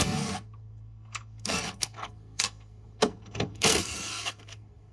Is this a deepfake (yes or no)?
yes